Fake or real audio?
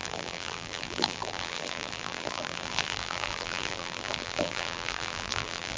fake